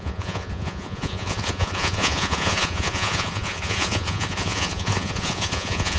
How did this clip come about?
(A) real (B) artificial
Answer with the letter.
B